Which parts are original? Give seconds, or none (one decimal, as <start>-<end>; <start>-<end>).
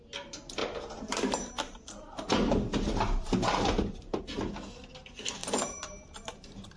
0.0-0.6; 4.2-5.4